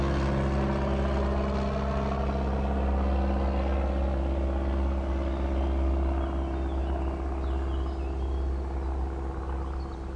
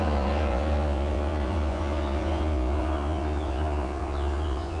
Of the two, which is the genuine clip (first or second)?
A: first